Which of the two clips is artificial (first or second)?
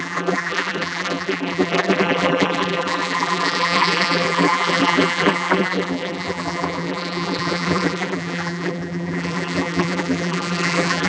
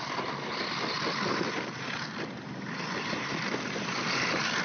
first